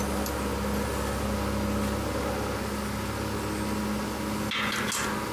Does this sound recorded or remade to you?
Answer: recorded